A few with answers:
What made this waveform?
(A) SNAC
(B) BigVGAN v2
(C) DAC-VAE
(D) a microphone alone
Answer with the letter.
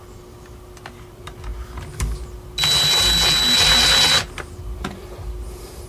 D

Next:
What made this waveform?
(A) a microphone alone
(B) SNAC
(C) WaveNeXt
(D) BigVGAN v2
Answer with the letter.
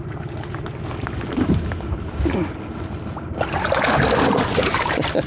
A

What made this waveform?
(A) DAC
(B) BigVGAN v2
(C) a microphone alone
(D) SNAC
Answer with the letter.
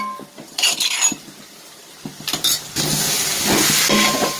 C